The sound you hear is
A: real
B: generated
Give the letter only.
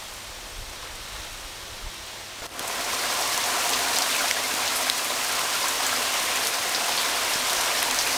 A